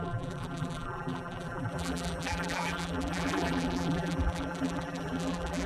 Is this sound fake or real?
fake